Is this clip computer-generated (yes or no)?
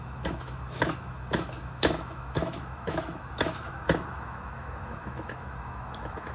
yes